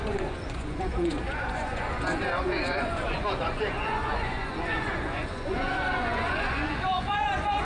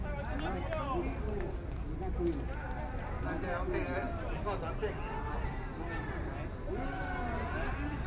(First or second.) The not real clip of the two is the first